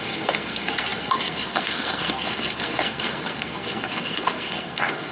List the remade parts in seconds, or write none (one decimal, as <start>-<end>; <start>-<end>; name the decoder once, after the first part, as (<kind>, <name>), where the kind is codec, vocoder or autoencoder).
0.0-5.1 (codec, SNAC)